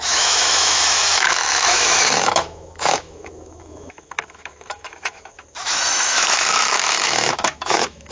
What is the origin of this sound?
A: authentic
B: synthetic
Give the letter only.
B